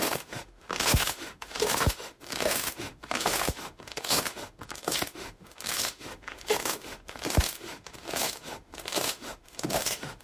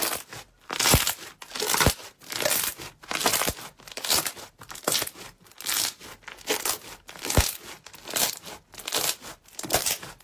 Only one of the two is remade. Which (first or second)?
first